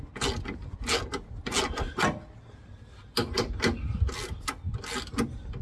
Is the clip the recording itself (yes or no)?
yes